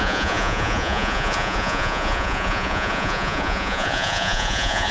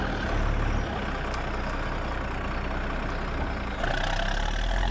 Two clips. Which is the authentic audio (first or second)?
second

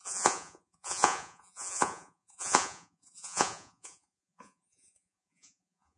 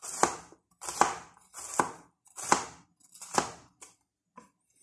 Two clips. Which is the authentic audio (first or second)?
second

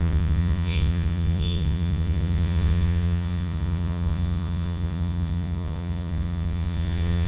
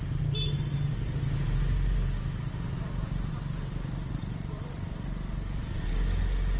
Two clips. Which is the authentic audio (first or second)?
second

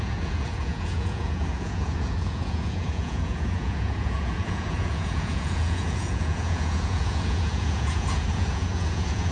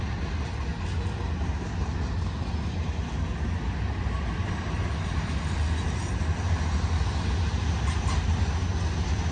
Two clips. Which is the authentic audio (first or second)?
second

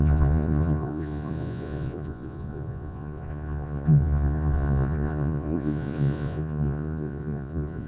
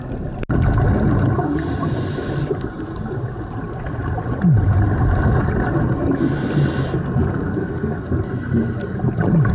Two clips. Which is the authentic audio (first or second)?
second